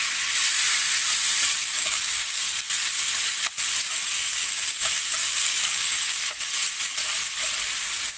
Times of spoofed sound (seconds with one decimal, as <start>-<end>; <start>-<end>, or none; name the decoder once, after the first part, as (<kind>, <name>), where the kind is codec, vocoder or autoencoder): 1.6-2.5 (codec, DAC); 4.3-6.3